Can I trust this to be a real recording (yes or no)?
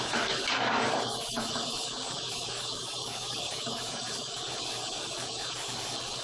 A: no